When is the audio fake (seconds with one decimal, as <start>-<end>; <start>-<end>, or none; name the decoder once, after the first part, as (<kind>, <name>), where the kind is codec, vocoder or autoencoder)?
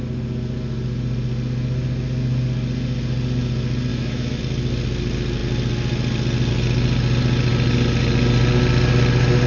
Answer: 3.9-4.4 (autoencoder, DAC-VAE)